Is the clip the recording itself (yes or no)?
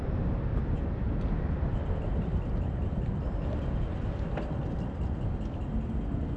yes